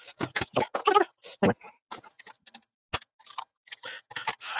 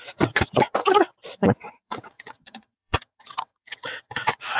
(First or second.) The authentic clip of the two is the first